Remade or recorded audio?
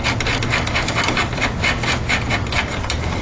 recorded